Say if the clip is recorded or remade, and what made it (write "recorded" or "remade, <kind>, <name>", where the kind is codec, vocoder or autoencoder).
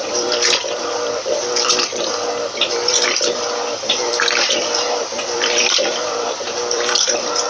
remade, vocoder, BigVGAN v2